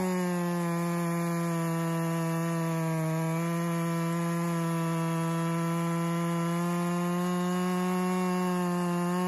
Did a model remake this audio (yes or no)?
no